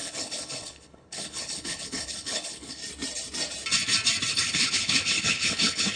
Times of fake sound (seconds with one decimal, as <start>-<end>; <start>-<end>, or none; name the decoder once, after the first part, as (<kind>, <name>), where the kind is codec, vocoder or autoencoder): 0.0-2.8 (codec, HILCodec); 4.3-6.0